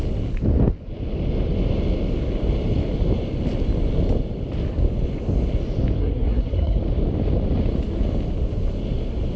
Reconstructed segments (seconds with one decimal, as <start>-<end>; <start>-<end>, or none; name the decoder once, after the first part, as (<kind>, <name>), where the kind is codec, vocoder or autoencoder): 6.0-6.8 (codec, SNAC)